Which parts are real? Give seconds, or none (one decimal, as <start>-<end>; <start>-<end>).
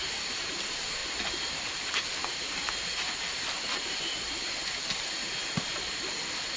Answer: 0.0-1.0; 4.0-6.6